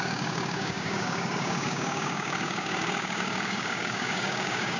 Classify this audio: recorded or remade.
remade